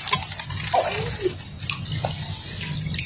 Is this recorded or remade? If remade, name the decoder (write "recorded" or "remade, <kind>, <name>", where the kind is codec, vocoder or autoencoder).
recorded